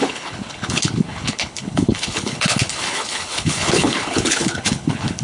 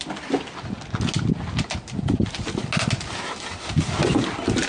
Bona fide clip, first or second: second